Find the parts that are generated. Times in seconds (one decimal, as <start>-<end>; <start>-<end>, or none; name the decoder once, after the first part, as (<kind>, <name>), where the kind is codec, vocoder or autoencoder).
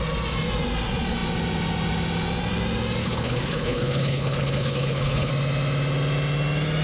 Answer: 3.0-5.3 (codec, HILCodec)